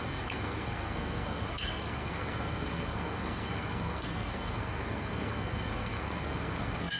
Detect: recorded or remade remade